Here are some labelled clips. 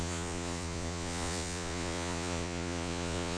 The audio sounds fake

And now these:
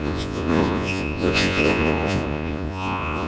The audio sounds fake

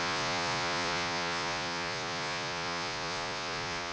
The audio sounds fake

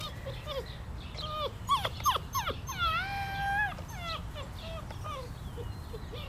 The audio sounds real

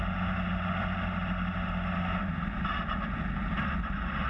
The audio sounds real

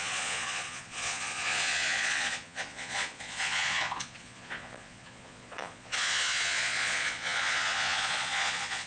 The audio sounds fake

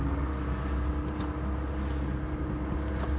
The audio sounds real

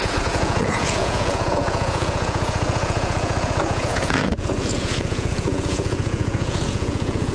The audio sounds fake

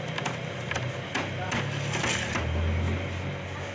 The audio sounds real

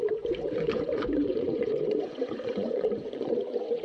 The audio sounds fake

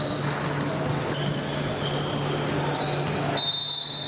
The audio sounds real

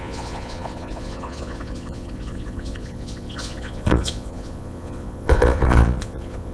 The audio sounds fake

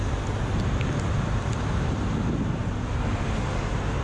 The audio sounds real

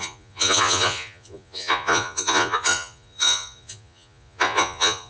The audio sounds fake